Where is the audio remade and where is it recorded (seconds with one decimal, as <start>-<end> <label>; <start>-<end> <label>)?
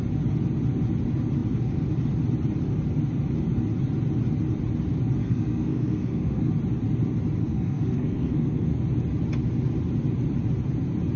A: 0.0-5.2 recorded; 5.2-6.5 remade; 6.5-7.4 recorded; 7.4-8.8 remade; 8.8-11.2 recorded